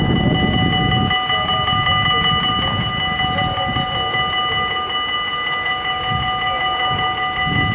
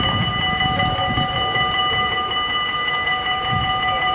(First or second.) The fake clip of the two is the second